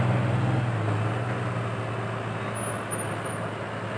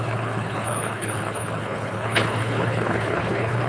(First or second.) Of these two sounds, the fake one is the second